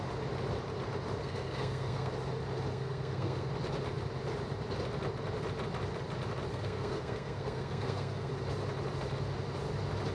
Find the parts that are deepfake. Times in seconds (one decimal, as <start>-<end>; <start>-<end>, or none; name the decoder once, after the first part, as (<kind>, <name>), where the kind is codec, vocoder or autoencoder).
1.2-2.1 (codec, SNAC); 2.7-3.5; 6.5-8.3